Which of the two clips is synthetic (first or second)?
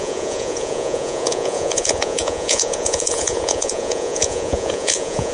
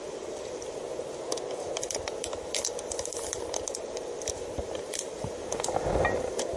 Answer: first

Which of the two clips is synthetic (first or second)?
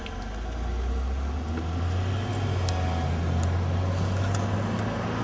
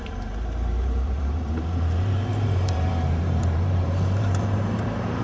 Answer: second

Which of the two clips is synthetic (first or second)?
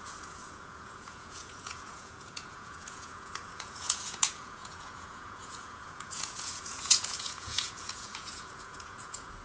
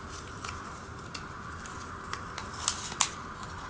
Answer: first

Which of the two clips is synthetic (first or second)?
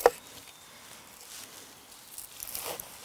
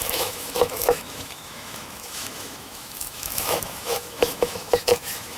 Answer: second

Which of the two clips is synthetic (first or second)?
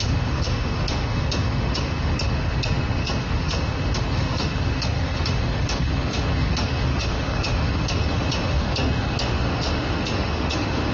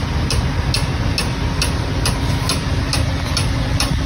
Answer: first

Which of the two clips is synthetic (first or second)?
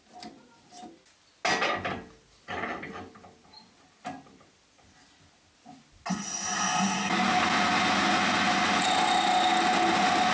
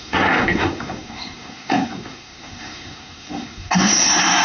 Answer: second